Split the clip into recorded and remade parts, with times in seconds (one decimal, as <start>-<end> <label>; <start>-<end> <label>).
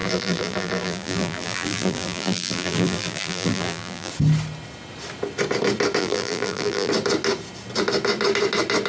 0.0-4.1 remade; 4.1-6.0 recorded; 6.0-6.9 remade; 6.9-8.9 recorded